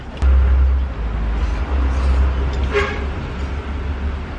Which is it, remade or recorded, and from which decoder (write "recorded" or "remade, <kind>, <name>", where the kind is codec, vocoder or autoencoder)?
recorded